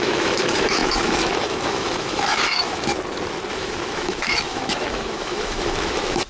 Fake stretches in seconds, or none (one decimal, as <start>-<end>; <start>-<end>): 0.0-2.9; 3.5-6.3